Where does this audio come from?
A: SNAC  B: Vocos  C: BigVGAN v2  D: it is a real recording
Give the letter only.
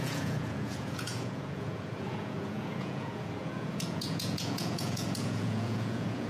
B